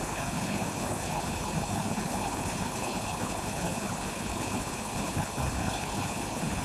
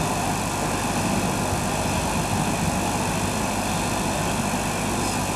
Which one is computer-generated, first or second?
first